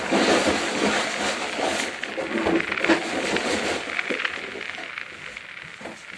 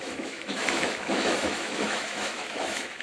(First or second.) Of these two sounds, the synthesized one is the second